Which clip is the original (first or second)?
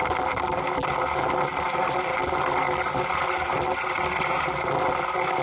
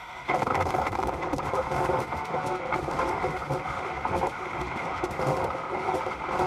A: first